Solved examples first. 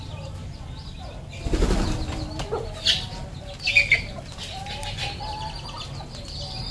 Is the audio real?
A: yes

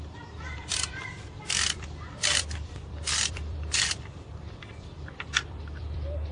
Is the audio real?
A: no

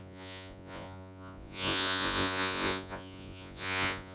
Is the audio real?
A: no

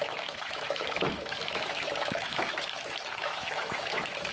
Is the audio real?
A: no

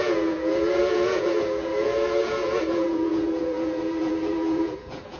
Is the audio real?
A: no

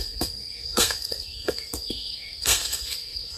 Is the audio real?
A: no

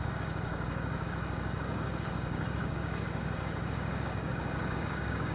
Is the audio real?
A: no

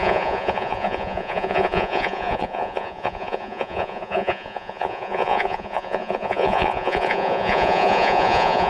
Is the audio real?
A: no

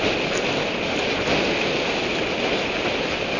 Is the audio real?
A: yes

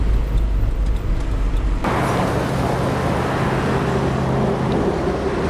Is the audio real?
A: yes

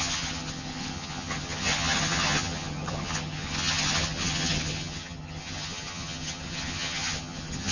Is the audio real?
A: no